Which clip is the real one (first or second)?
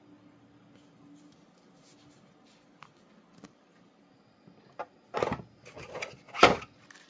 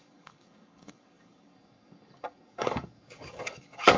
first